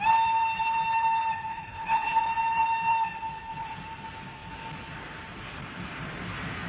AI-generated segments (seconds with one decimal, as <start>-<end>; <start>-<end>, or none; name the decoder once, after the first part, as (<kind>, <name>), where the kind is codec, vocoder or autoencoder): 1.5-2.2 (codec, HILCodec)